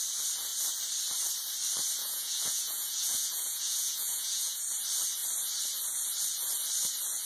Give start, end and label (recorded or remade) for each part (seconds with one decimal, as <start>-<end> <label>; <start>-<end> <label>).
0.0-2.0 recorded; 2.0-4.6 remade; 4.6-7.3 recorded